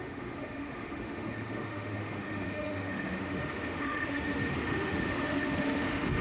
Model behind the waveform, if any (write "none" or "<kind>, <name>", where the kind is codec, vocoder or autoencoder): autoencoder, DAC-VAE